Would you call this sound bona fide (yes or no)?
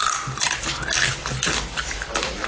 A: yes